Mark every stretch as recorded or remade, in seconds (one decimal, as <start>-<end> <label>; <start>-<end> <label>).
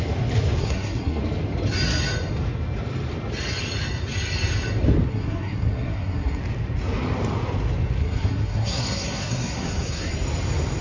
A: 0.0-0.6 recorded; 0.6-1.2 remade; 1.2-5.1 recorded; 5.1-6.4 remade; 6.4-8.0 recorded; 8.0-10.1 remade; 10.1-10.8 recorded